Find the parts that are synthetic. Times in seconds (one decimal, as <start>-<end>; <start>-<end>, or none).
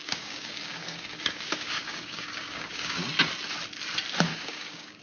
0.0-3.0; 4.3-5.0